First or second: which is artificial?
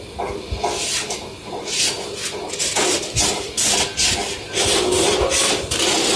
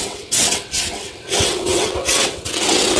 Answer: second